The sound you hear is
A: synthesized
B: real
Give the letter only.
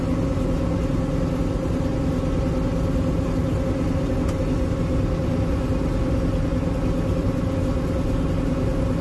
B